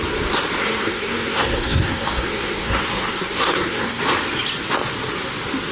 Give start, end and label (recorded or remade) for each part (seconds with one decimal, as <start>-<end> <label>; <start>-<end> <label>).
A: 0.0-0.6 recorded; 0.6-4.0 remade; 4.0-5.7 recorded